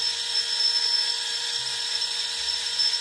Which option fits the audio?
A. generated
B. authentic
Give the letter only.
A